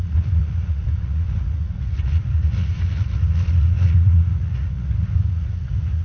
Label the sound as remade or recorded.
remade